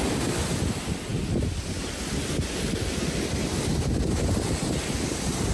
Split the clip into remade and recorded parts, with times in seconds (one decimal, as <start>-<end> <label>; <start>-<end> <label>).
0.0-5.5 recorded